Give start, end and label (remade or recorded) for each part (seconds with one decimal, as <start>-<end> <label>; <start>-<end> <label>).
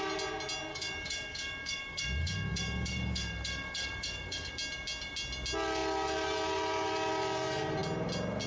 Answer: 0.0-0.7 recorded; 0.7-4.5 remade; 4.5-8.5 recorded